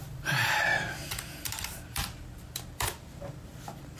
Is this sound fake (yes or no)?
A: yes